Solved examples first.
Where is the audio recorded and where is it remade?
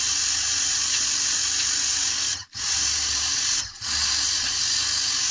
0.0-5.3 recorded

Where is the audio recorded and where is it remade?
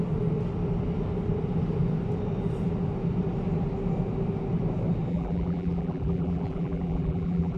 0.0-5.1 recorded; 5.1-7.6 remade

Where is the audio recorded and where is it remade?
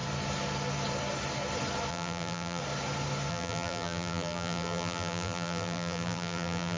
0.0-1.9 recorded; 1.9-2.6 remade; 2.6-3.3 recorded; 3.3-6.8 remade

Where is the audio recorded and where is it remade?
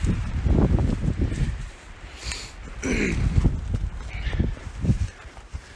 0.0-2.2 remade; 2.2-4.5 recorded; 4.5-5.8 remade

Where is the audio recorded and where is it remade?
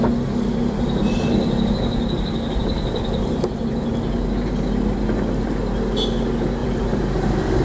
0.0-6.6 recorded; 6.6-7.6 remade